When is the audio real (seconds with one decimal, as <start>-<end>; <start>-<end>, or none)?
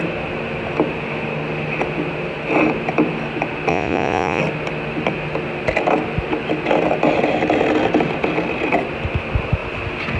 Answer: 0.0-3.7; 4.4-10.2